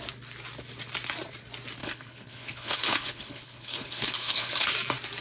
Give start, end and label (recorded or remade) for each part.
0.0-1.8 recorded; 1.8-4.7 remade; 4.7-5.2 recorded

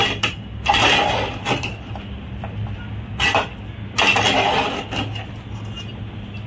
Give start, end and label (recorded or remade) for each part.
0.0-2.8 remade; 2.8-6.5 recorded

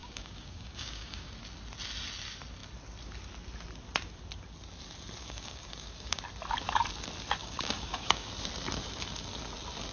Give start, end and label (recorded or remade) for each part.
0.0-1.3 remade; 1.3-5.2 recorded; 5.2-6.2 remade; 6.2-7.4 recorded; 7.4-8.3 remade; 8.3-9.9 recorded

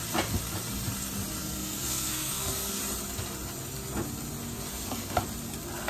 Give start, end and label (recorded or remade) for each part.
0.0-1.4 recorded; 1.4-2.8 remade; 2.8-4.7 recorded; 4.7-5.2 remade; 5.2-5.9 recorded

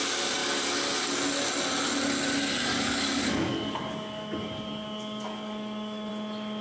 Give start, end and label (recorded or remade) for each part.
0.0-2.7 recorded; 2.7-6.1 remade; 6.1-6.6 recorded